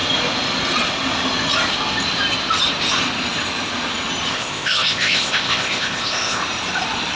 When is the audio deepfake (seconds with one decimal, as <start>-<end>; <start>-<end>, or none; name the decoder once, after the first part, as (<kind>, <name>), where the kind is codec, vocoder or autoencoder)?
4.3-6.4 (codec, ZipCodec)